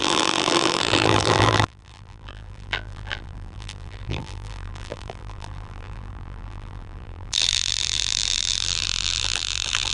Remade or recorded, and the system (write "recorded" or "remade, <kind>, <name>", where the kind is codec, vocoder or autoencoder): remade, vocoder, BigVGAN v2